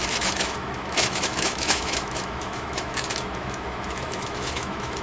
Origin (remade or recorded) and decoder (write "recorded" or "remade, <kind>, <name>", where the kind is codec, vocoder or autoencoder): remade, autoencoder, DAC-VAE